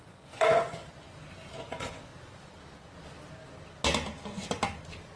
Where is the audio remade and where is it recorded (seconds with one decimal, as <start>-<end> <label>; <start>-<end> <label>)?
0.0-0.8 remade; 0.8-1.6 recorded; 1.6-2.1 remade; 2.1-5.2 recorded